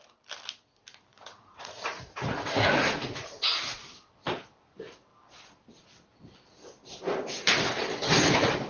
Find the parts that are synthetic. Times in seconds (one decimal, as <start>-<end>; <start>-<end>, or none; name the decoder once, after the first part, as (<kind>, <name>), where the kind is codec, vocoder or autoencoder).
1.1-3.8 (vocoder, Vocos)

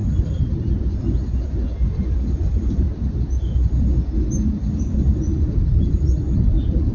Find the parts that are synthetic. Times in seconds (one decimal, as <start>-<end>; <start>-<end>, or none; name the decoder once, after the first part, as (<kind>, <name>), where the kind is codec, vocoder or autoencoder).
0.0-0.6 (vocoder, BigVGAN v2); 1.8-2.8

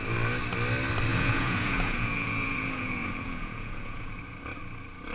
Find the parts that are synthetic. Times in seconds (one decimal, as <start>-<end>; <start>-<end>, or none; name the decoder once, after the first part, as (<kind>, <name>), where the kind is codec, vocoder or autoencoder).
1.1-4.2 (vocoder, Vocos)

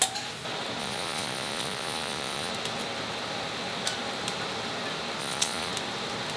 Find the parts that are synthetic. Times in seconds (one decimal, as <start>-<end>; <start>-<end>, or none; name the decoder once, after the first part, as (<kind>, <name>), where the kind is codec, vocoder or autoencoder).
0.8-2.5 (vocoder, Vocos); 5.2-5.7

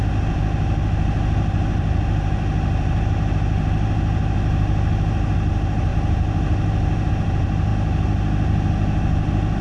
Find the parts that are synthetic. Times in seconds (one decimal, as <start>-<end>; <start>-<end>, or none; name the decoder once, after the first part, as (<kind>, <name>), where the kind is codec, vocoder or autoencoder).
none

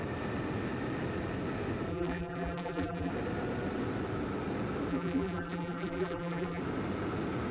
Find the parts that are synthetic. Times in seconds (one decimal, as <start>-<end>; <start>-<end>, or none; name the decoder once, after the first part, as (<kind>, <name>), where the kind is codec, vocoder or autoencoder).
1.9-3.1 (vocoder, BigVGAN v2); 4.9-6.6

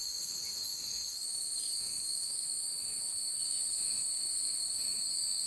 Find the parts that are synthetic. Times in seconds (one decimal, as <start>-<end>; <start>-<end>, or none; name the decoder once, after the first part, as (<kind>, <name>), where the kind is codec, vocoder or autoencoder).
0.0-5.5 (autoencoder, DAC-VAE)